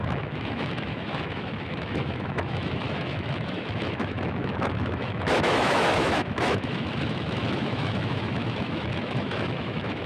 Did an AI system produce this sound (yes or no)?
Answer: yes